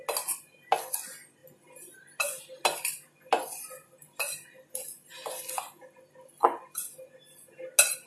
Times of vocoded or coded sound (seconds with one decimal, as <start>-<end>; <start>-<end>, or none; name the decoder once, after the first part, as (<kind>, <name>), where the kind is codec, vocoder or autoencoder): none